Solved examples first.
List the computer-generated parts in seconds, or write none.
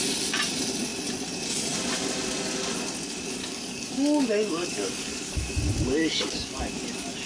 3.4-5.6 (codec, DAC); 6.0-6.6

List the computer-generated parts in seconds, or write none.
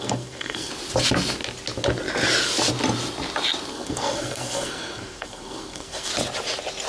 0.0-0.7 (codec, SNAC); 3.7-6.1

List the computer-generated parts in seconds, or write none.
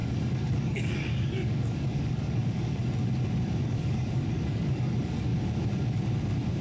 0.0-2.8 (codec, DAC); 3.6-5.3